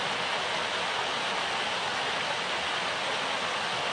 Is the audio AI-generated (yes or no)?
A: no